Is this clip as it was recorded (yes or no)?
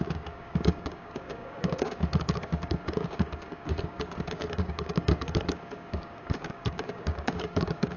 no